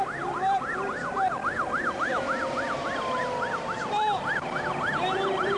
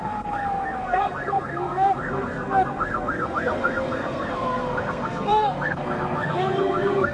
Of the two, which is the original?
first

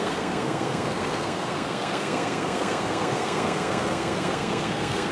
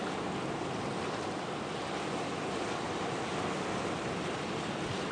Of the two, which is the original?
second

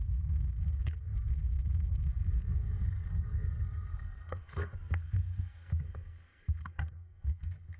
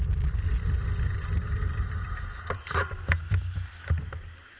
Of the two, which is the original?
second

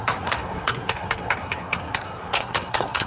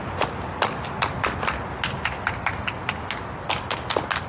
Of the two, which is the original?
second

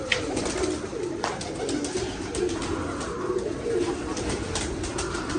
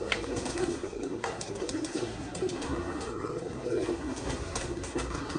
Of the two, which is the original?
first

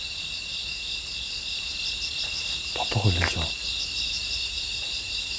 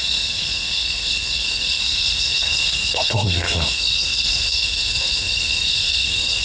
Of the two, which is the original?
first